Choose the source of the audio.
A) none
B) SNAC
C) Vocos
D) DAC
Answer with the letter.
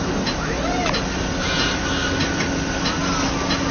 A